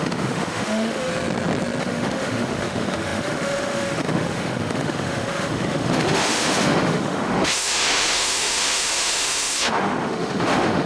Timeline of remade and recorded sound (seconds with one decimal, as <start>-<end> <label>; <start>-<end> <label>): 0.0-1.1 remade; 1.1-1.8 recorded; 1.8-10.9 remade